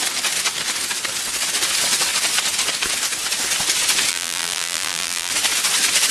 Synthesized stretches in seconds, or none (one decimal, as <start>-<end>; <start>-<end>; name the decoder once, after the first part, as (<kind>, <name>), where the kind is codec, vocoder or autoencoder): 4.1-5.3 (vocoder, BigVGAN v2)